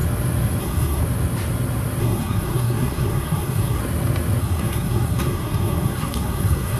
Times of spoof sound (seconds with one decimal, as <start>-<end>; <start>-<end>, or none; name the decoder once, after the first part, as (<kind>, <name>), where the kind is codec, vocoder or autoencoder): 0.6-1.0 (codec, SNAC); 2.0-3.8; 4.4-6.8